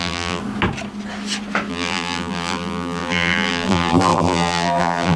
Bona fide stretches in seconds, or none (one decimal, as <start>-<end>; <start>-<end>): 0.4-1.7